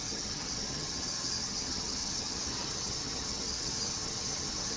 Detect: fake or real fake